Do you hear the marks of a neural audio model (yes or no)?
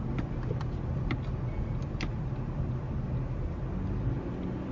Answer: no